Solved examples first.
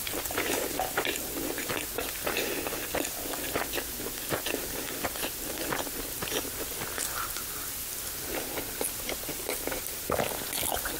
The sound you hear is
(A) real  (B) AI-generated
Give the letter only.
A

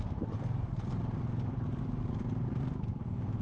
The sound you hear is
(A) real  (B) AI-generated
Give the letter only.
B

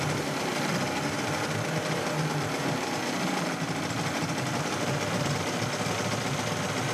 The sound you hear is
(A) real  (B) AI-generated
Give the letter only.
A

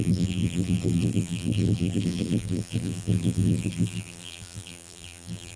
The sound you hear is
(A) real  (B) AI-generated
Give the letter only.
B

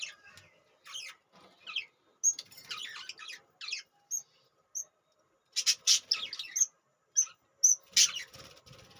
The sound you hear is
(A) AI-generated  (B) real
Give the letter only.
B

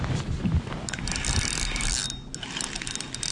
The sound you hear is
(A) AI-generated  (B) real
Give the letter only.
B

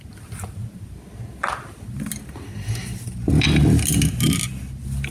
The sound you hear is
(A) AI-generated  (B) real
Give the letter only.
B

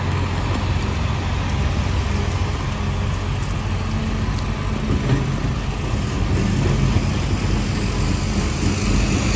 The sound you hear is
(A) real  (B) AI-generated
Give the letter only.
A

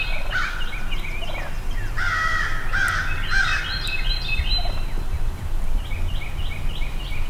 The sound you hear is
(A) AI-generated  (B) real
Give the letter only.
B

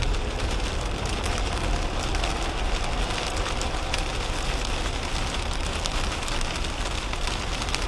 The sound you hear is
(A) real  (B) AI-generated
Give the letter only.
A